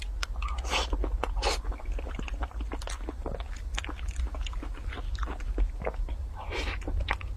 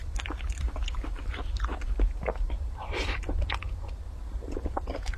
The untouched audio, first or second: first